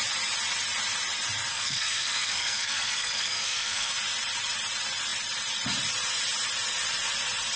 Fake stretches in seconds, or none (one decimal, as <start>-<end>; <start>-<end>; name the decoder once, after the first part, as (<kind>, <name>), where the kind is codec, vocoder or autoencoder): 1.5-3.9 (codec, SNAC)